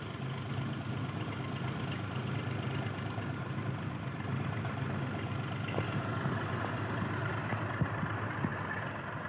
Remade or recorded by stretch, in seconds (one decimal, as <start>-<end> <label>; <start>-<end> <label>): 0.0-9.3 recorded